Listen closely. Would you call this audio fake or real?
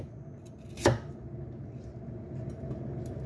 real